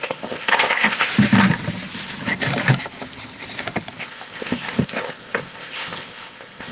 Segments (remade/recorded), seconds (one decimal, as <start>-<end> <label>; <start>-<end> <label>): 0.0-1.1 remade; 1.1-4.0 recorded; 4.0-6.7 remade